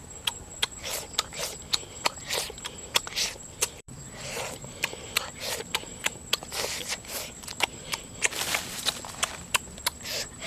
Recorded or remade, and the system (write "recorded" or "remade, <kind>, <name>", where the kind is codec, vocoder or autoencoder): remade, vocoder, BigVGAN v2